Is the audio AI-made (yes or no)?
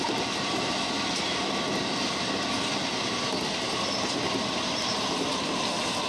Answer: no